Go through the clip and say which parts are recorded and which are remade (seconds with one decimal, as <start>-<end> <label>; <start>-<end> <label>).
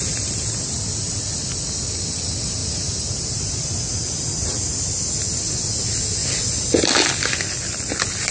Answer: 0.0-2.6 recorded; 2.6-3.7 remade; 3.7-8.3 recorded